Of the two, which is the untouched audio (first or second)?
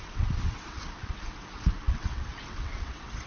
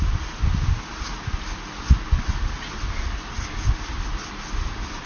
second